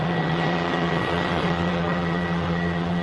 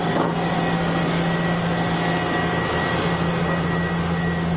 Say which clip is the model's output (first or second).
first